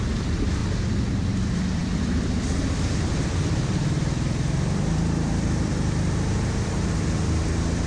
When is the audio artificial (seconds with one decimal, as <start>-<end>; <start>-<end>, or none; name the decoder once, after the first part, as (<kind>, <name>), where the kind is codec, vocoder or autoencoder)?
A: 0.0-0.6 (vocoder, BigVGAN v2); 1.1-7.9